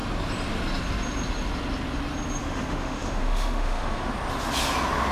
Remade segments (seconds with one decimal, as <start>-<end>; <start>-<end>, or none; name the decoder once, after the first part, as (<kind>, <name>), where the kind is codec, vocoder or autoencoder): 2.4-4.1 (autoencoder, DAC-VAE)